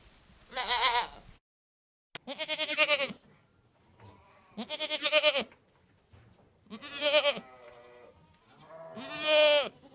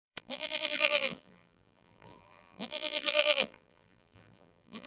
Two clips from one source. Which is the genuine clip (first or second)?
first